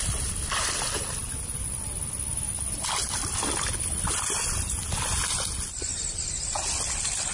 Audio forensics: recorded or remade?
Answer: recorded